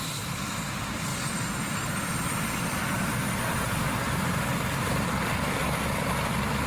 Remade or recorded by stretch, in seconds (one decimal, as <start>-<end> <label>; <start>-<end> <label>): 0.0-6.7 recorded